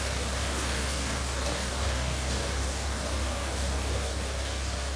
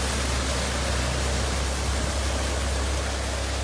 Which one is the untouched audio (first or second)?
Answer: second